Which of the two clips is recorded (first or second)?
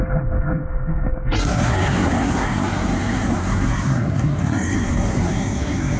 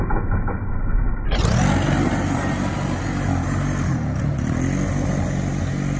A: second